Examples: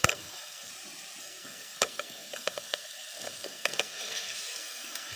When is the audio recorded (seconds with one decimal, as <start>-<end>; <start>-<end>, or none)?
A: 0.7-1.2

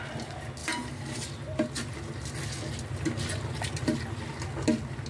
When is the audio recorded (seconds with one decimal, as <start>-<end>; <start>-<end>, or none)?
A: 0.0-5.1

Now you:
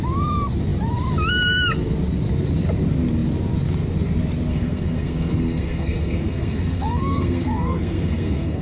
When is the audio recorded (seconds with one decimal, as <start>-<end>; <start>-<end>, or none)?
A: 0.0-4.5

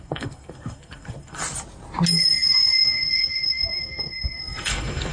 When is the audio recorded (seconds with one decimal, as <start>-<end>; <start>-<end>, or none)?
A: 1.4-2.1

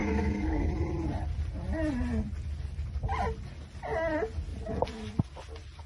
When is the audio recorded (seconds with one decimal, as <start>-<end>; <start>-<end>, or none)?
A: 0.7-5.9

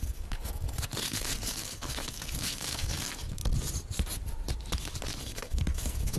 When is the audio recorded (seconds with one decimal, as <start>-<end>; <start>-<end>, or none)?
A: 3.4-5.2